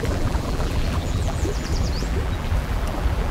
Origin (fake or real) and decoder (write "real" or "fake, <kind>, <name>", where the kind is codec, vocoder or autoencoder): fake, vocoder, BigVGAN v2